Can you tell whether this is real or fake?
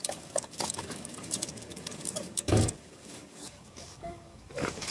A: fake